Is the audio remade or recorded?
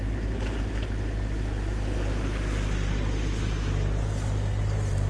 recorded